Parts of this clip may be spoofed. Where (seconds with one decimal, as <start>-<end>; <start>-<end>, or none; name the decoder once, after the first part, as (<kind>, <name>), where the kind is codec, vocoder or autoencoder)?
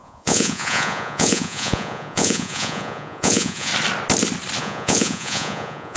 0.0-3.7 (vocoder, Vocos); 4.6-6.0